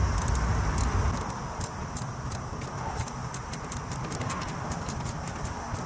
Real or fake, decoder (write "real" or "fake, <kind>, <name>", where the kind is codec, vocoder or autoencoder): real